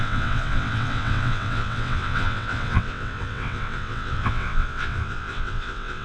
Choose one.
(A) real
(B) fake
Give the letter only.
B